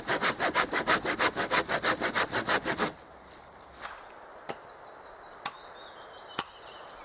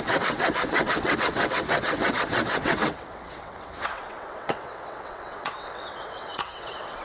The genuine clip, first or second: first